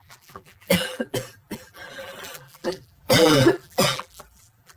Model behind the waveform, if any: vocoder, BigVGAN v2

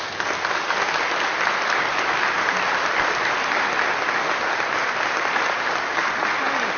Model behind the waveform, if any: none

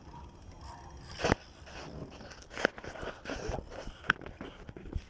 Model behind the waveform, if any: none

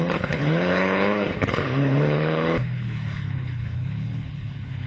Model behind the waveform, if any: codec, HILCodec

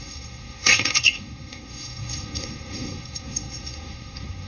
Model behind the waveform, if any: codec, SNAC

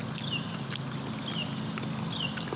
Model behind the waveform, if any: none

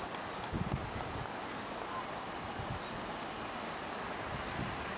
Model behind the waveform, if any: none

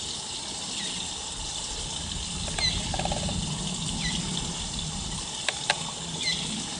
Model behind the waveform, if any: none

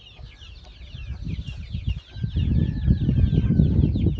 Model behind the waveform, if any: none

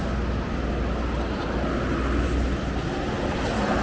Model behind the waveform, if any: none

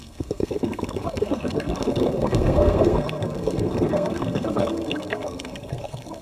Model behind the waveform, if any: codec, SNAC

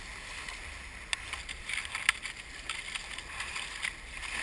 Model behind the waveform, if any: none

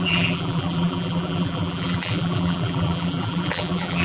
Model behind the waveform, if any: vocoder, BigVGAN v2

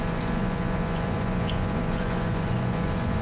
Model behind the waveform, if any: vocoder, Vocos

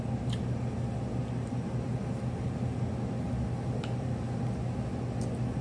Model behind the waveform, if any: none